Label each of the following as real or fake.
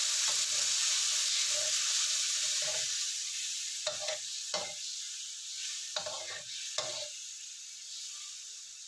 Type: real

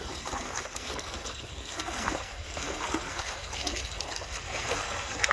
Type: fake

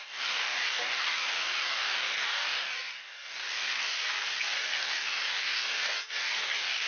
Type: fake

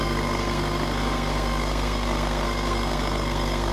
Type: fake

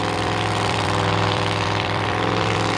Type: fake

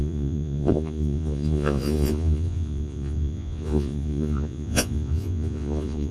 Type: fake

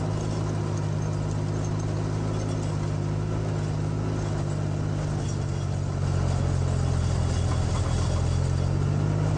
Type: real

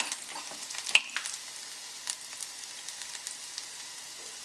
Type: real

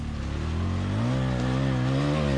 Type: real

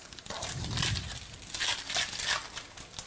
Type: real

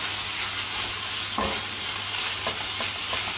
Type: real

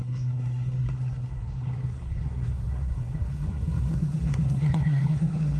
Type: fake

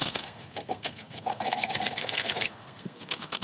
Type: fake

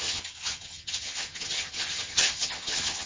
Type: fake